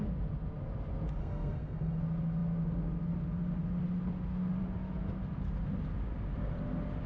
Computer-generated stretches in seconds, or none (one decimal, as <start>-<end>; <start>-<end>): 1.2-2.0